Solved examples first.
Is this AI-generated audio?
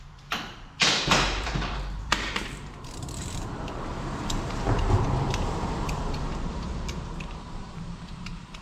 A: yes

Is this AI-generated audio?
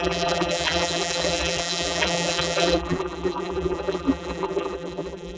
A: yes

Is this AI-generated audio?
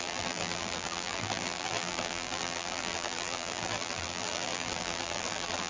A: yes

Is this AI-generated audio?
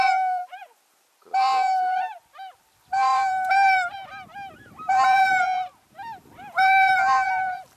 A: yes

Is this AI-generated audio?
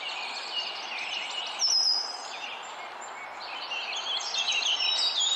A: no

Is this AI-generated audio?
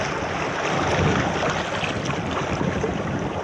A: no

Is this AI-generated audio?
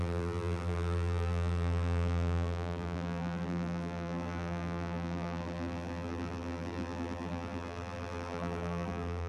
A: yes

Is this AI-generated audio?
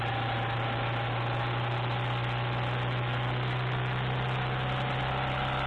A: no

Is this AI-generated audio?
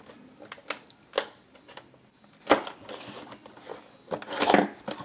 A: no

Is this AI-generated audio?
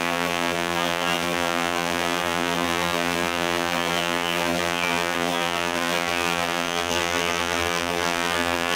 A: yes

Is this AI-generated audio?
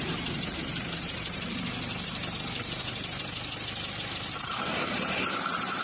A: yes